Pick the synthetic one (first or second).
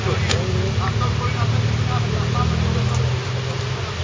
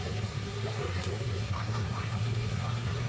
second